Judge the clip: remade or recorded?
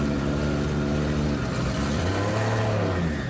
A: recorded